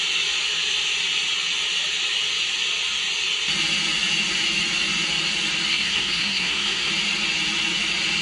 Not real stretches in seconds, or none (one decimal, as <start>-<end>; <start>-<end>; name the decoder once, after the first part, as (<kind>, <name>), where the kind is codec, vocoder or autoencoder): 5.7-6.9 (codec, SNAC)